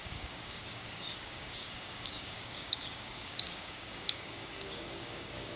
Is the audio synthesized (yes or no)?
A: yes